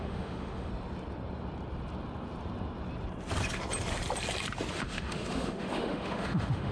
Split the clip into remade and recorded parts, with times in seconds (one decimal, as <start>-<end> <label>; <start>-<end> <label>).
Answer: 0.0-0.7 remade; 0.7-4.7 recorded; 4.7-6.7 remade